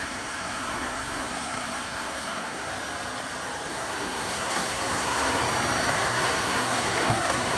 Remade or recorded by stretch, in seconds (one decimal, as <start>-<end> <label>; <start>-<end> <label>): 0.0-2.7 remade; 2.7-3.7 recorded; 3.7-5.4 remade; 5.4-5.9 recorded; 5.9-7.6 remade